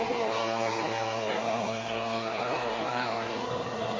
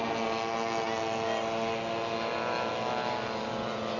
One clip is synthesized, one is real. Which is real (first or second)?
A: second